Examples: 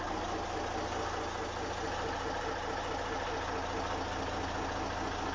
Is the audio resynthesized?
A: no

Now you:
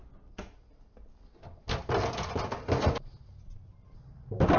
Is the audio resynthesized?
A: no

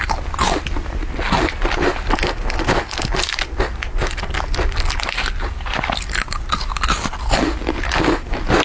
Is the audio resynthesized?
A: no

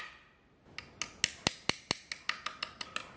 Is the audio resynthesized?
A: no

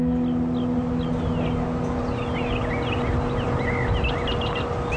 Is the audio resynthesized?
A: no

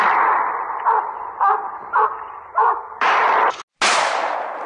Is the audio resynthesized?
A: no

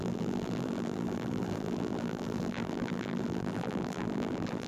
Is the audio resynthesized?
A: yes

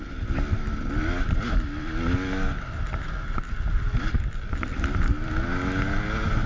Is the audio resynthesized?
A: no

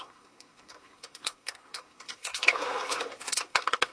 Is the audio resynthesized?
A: yes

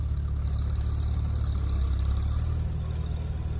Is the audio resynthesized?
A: no